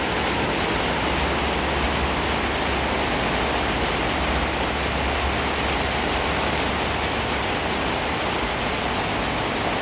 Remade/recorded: recorded